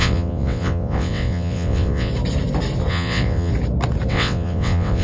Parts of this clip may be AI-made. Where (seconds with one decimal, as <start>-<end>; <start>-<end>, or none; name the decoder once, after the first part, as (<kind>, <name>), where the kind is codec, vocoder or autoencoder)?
0.0-2.1 (vocoder, WaveNeXt); 2.9-3.5; 4.1-5.0